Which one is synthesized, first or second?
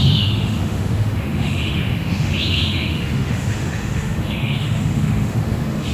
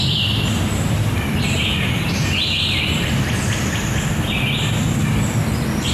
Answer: first